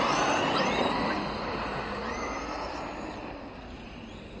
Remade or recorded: recorded